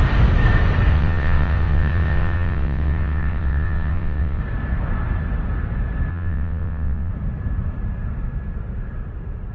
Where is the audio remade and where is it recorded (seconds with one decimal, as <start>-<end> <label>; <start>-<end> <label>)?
0.0-0.9 recorded; 0.9-4.4 remade; 4.4-6.1 recorded; 6.1-7.1 remade; 7.1-9.5 recorded